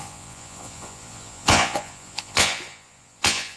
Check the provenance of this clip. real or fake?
fake